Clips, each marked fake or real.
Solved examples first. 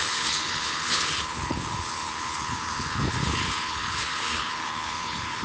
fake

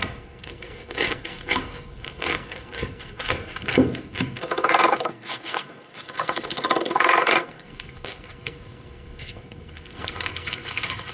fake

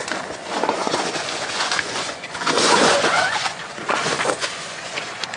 fake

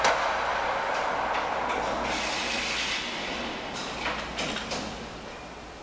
real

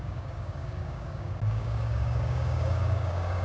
fake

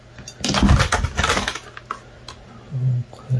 real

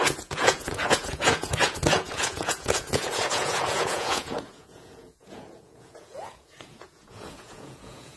fake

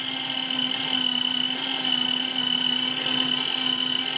real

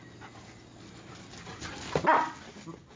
real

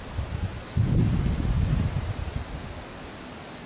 real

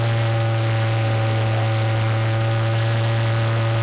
real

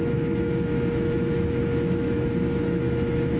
fake